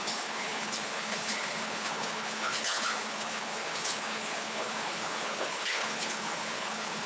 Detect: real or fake fake